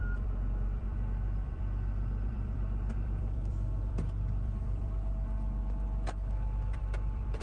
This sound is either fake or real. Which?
fake